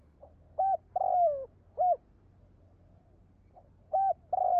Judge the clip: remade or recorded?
recorded